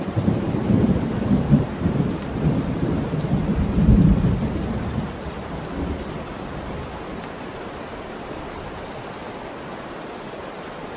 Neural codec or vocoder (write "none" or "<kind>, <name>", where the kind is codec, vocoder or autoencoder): vocoder, BigVGAN v2